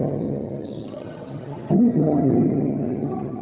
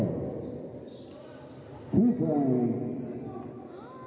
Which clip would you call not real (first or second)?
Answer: first